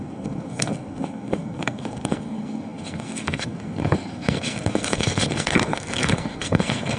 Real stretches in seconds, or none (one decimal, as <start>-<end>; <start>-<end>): none